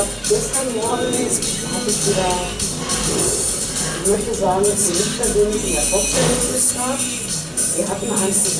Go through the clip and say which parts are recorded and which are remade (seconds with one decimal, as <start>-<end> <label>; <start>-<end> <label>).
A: 0.0-1.7 remade; 1.7-2.8 recorded; 2.8-4.8 remade; 4.8-7.5 recorded; 7.5-8.6 remade